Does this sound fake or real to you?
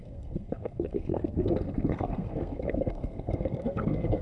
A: fake